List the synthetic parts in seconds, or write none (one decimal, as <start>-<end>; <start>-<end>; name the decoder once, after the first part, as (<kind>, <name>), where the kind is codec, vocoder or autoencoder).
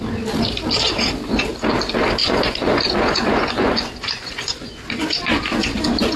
2.2-6.2 (vocoder, Vocos)